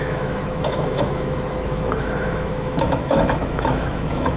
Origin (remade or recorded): remade